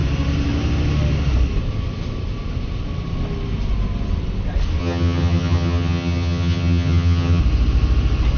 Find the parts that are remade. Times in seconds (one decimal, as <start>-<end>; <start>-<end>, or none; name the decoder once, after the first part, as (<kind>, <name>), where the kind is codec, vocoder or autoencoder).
4.8-7.4 (vocoder, HiFi-GAN)